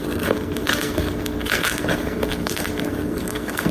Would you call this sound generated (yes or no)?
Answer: yes